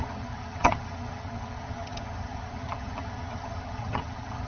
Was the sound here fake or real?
fake